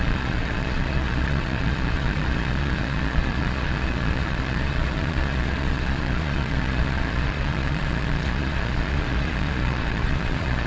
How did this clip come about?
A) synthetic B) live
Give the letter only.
A